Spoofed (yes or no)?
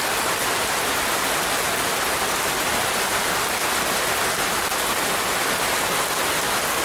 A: no